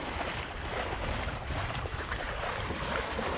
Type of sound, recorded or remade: remade